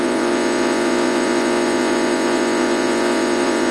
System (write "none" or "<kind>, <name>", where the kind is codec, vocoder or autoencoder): vocoder, Vocos